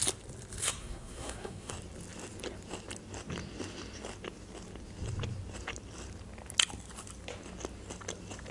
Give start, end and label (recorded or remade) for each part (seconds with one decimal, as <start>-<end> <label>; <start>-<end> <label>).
0.0-0.6 recorded; 0.6-1.7 remade; 1.7-8.5 recorded